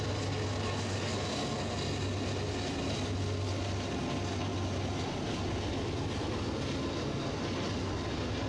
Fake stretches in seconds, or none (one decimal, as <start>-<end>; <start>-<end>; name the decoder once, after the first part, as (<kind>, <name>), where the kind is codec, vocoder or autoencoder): none